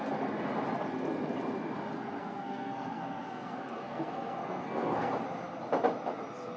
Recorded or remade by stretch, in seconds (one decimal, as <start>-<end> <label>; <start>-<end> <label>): 0.0-2.2 recorded; 2.2-5.1 remade; 5.1-6.6 recorded